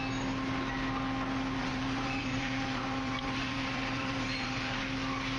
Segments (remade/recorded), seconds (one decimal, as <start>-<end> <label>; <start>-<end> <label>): 0.0-1.6 recorded; 1.6-4.8 remade; 4.8-5.4 recorded